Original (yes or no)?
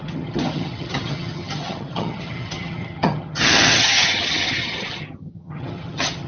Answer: no